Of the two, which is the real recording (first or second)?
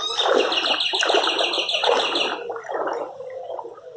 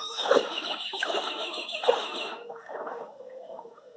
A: first